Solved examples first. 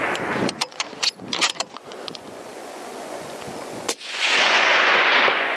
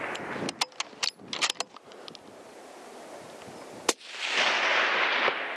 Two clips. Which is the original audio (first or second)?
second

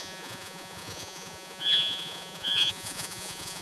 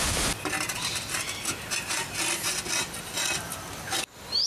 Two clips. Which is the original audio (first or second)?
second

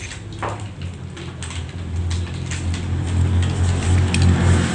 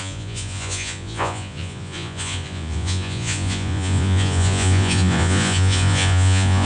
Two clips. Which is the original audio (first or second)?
first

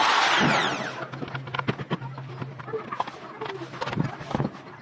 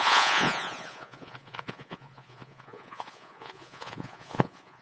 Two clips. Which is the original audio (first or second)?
first